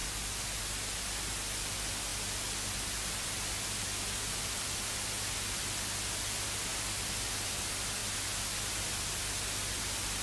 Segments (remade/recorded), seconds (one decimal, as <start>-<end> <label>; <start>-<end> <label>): 0.0-10.2 recorded